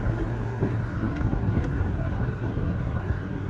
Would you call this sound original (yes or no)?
no